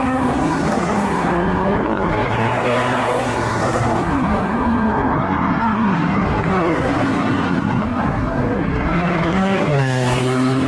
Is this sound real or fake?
fake